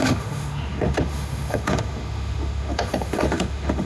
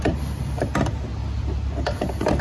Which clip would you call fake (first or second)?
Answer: first